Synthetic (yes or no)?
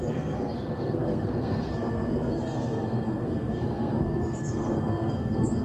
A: yes